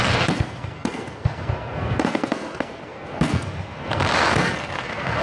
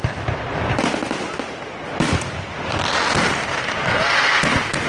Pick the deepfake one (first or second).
first